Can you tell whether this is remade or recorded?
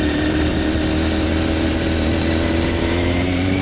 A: remade